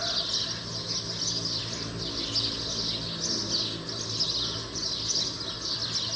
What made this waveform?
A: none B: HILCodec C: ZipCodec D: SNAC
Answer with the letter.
A